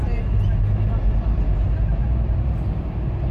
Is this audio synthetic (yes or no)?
no